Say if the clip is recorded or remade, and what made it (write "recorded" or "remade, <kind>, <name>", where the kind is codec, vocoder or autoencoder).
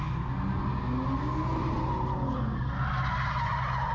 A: recorded